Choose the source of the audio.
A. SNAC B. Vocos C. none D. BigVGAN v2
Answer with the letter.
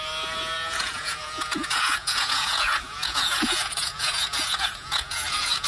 B